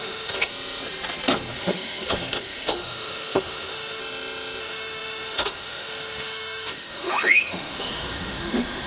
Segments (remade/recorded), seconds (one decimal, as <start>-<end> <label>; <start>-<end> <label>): 0.0-0.5 remade; 0.5-1.5 recorded; 1.5-4.0 remade; 4.0-4.6 recorded; 4.6-8.9 remade